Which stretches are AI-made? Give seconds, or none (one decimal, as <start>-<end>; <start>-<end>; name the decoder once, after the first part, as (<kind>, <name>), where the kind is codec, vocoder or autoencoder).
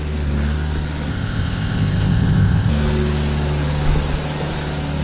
1.1-2.7 (codec, ZipCodec)